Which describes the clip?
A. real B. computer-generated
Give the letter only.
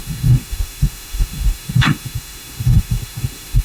B